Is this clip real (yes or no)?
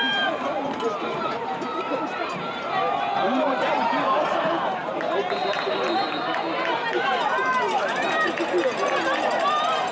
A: no